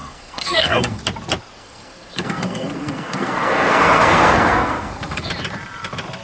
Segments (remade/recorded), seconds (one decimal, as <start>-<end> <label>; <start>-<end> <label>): 0.0-1.0 remade; 1.0-1.6 recorded; 1.6-5.3 remade; 5.3-6.2 recorded